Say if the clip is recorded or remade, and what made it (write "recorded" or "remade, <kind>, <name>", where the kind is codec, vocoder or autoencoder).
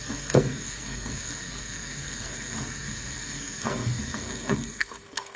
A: remade, codec, SNAC